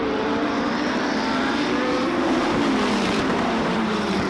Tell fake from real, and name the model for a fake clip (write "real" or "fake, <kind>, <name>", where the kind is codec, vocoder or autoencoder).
fake, vocoder, BigVGAN v2